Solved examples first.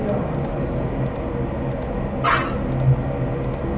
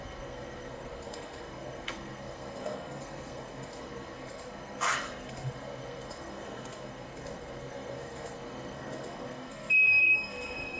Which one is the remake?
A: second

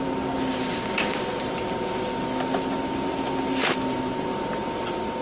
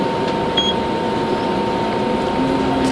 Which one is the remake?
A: first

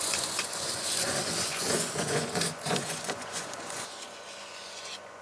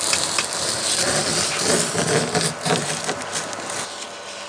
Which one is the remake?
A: first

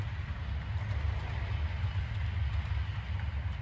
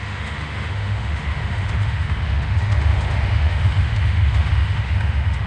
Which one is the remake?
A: second